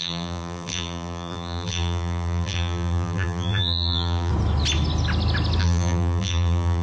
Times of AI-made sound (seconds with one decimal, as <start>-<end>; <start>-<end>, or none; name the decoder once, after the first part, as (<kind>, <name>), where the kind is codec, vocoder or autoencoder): 0.0-4.3 (vocoder, BigVGAN v2); 5.6-6.8